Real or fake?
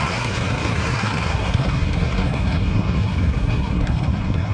fake